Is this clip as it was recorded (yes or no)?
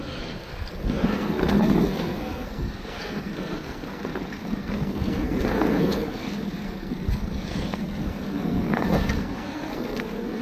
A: no